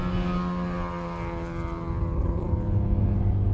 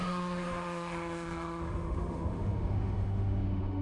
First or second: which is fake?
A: second